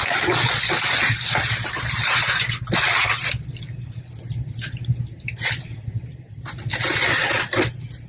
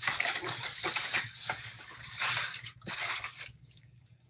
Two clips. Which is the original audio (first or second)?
first